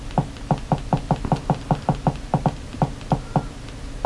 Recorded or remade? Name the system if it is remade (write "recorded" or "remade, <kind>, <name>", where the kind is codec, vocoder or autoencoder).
recorded